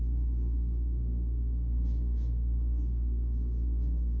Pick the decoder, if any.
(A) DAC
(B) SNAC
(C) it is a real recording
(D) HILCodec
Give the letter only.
B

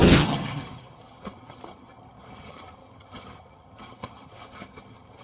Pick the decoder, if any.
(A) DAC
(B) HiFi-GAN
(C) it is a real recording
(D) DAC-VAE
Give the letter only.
B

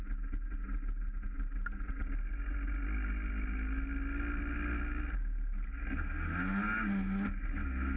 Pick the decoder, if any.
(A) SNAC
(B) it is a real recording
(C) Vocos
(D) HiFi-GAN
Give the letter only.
B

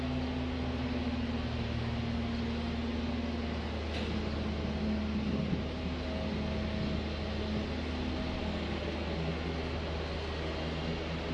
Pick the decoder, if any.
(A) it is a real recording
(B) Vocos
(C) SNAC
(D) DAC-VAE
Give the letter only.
A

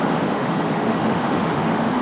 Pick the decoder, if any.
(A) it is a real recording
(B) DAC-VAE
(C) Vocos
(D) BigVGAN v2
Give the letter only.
B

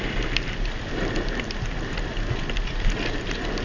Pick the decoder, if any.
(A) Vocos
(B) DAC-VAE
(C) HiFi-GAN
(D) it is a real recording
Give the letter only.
D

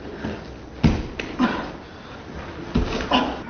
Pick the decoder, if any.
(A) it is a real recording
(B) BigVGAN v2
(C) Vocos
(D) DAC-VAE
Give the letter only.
A